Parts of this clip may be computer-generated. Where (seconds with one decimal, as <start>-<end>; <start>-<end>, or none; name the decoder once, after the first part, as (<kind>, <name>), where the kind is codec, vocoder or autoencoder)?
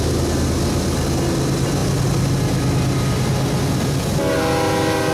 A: none